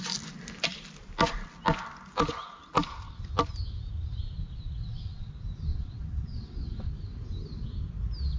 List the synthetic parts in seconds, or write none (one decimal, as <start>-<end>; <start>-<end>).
4.8-5.3; 5.7-6.9